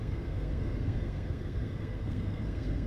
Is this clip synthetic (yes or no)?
yes